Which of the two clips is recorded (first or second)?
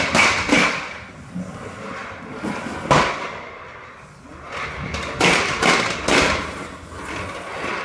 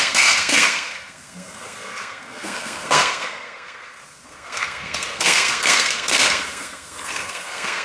first